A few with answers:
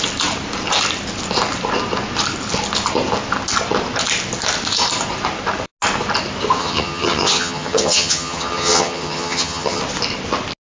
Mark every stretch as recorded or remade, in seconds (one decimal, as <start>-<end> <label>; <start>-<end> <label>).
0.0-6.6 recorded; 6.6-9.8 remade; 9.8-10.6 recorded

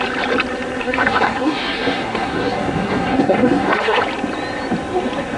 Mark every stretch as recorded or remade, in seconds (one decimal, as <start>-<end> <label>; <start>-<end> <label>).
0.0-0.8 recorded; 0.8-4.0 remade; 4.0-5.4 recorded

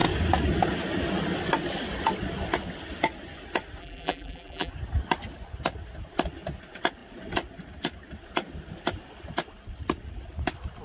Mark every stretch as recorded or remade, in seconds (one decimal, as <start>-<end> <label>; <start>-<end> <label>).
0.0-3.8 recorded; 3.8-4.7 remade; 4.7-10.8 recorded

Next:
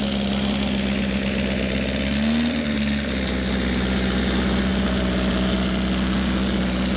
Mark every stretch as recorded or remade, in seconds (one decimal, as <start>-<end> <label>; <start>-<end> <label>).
0.0-7.0 recorded

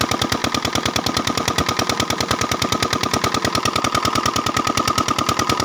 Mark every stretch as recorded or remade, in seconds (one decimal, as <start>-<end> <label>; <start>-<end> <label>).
0.0-5.6 recorded